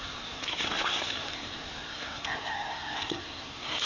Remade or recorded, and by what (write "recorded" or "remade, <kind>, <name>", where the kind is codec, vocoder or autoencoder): remade, codec, SNAC